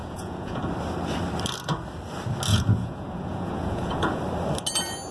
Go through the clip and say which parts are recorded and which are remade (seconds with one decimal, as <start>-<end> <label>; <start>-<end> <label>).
0.0-0.6 remade; 0.6-2.5 recorded; 2.5-4.2 remade; 4.2-5.1 recorded

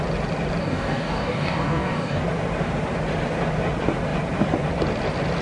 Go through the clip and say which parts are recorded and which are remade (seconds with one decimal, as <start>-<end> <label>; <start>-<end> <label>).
0.0-0.6 recorded; 0.6-2.2 remade; 2.2-5.4 recorded

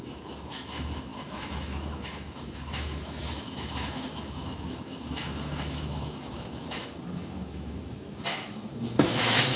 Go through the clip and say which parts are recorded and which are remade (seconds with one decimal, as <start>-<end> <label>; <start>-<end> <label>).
0.0-9.6 remade

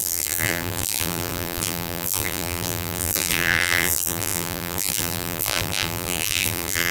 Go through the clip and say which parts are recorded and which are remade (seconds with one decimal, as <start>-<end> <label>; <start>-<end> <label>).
0.0-6.9 remade

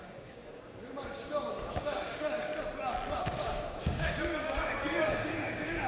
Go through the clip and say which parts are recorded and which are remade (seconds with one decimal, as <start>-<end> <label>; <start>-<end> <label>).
0.0-2.5 remade; 2.5-3.2 recorded; 3.2-5.9 remade

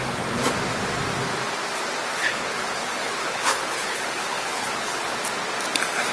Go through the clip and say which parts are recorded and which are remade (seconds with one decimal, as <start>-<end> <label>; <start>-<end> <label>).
0.0-2.1 recorded; 2.1-5.2 remade; 5.2-6.1 recorded

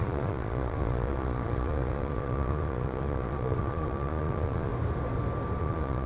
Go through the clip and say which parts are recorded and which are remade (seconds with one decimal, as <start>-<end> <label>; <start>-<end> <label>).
0.0-4.7 remade; 4.7-5.6 recorded; 5.6-6.1 remade

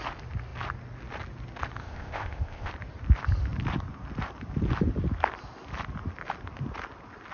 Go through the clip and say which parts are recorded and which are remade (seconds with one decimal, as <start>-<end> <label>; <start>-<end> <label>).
0.0-1.8 recorded; 1.8-2.7 remade; 2.7-7.3 recorded